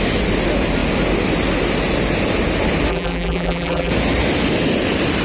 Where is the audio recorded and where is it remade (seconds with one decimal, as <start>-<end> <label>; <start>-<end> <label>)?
0.0-2.9 recorded; 2.9-3.9 remade; 3.9-5.2 recorded